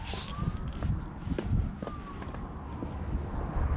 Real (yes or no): yes